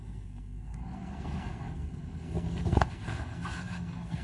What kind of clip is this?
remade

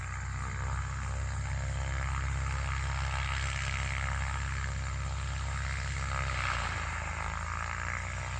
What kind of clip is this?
recorded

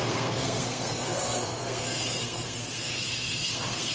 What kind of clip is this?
remade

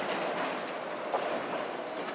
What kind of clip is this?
recorded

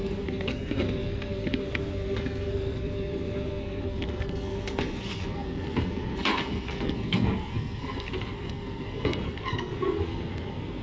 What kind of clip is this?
remade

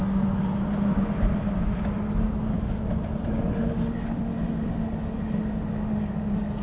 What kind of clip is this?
recorded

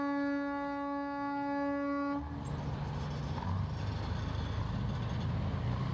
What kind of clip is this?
recorded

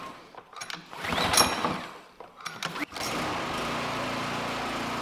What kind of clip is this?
recorded